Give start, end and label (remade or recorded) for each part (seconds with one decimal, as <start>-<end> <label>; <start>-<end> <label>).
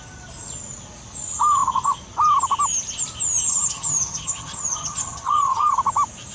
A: 0.0-3.5 recorded; 3.5-5.7 remade; 5.7-6.3 recorded